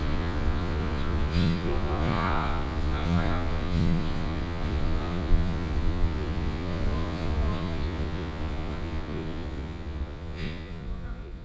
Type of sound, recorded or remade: remade